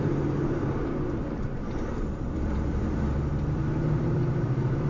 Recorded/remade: remade